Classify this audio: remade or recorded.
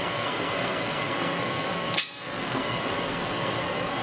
remade